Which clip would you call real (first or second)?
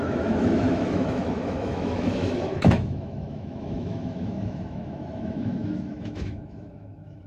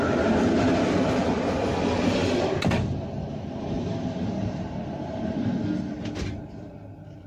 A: second